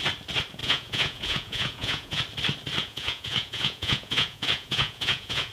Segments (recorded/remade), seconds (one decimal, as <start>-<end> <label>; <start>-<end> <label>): 0.0-0.6 recorded; 0.6-2.2 remade; 2.2-2.8 recorded; 2.8-5.5 remade